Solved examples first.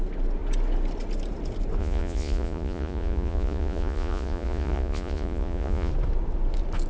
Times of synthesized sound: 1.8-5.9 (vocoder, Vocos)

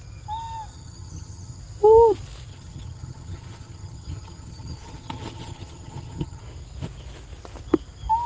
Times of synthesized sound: 0.7-1.6 (vocoder, HiFi-GAN); 2.5-6.4